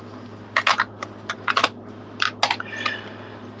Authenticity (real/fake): real